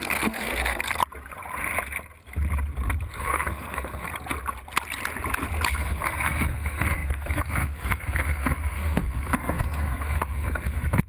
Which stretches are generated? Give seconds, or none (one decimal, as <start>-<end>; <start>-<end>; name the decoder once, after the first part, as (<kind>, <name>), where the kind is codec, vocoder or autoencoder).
0.0-1.0 (codec, SNAC); 3.2-4.1; 5.7-11.1